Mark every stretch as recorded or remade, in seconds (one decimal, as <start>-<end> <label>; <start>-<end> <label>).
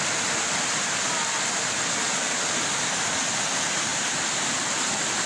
0.0-5.3 recorded